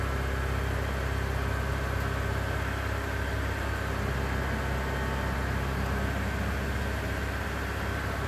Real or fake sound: real